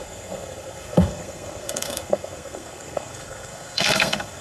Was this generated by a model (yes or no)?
yes